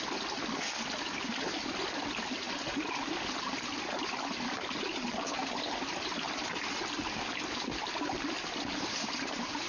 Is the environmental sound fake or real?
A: real